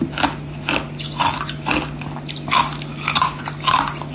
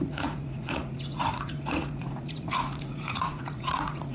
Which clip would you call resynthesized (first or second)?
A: second